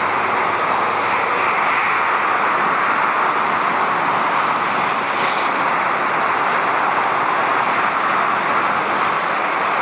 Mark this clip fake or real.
real